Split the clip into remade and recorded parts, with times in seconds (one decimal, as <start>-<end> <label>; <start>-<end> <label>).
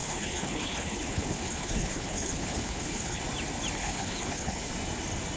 0.0-3.2 remade; 3.2-3.8 recorded; 3.8-4.7 remade; 4.7-5.4 recorded